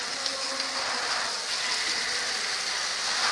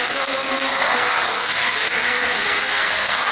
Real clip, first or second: first